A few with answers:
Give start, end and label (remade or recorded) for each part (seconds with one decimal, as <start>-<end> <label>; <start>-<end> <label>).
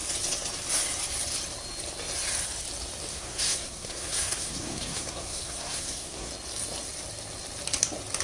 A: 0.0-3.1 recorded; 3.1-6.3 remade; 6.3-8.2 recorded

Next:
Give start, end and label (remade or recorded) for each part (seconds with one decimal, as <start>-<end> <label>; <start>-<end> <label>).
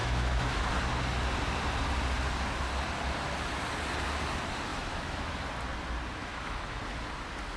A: 0.0-0.7 remade; 0.7-4.7 recorded; 4.7-5.3 remade; 5.3-6.2 recorded; 6.2-6.8 remade; 6.8-7.6 recorded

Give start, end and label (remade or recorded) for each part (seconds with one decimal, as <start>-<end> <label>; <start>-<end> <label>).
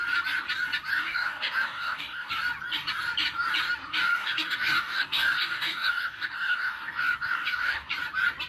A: 0.0-0.9 recorded; 0.9-2.3 remade; 2.3-3.9 recorded; 3.9-7.9 remade; 7.9-8.5 recorded